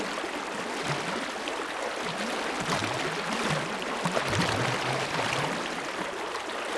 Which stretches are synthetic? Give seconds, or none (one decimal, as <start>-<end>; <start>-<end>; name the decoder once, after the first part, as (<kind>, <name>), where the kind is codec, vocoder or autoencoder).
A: none